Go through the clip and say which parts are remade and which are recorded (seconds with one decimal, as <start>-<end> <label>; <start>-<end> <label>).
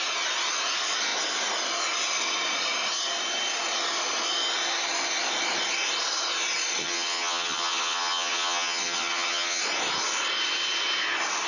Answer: 0.0-6.8 recorded; 6.8-9.6 remade; 9.6-11.5 recorded